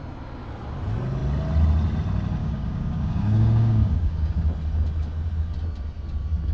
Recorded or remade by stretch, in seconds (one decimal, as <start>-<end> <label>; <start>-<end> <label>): 0.0-2.4 recorded; 2.4-4.3 remade; 4.3-6.5 recorded